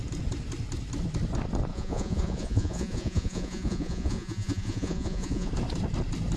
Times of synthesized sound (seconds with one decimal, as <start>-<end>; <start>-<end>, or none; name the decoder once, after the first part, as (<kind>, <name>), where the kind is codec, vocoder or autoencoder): 1.7-5.5 (vocoder, Vocos)